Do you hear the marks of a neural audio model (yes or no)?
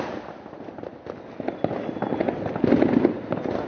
no